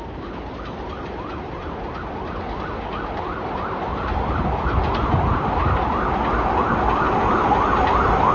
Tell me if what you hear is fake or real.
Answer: real